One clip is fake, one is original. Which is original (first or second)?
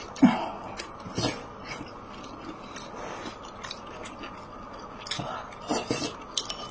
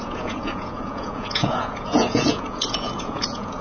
first